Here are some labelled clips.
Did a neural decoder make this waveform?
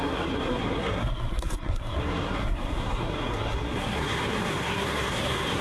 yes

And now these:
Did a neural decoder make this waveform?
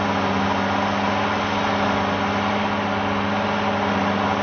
no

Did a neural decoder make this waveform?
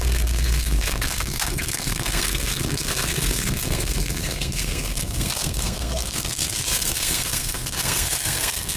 yes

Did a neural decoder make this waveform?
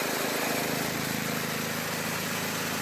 no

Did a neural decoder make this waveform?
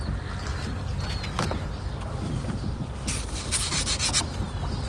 no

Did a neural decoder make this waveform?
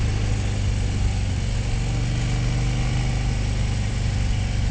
no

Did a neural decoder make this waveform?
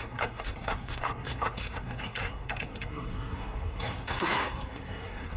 yes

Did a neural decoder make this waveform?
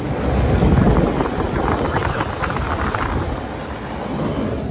no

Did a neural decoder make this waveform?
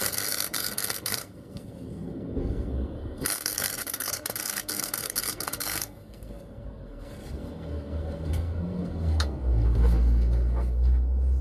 yes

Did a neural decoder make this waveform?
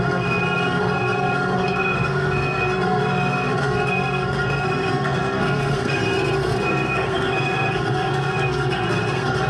yes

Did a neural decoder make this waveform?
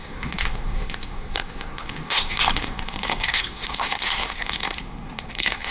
yes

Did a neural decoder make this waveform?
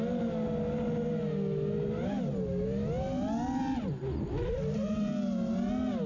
no